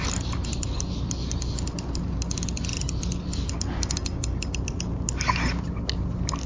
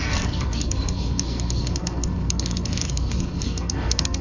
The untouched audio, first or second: first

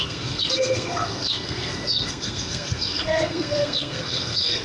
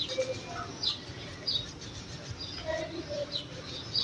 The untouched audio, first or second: second